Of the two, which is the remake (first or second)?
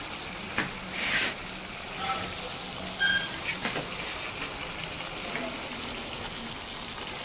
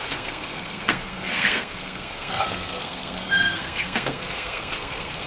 second